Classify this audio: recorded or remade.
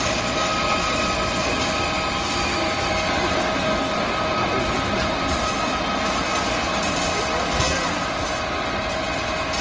recorded